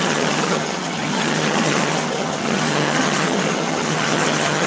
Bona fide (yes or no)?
no